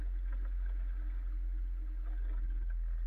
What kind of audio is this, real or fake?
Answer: real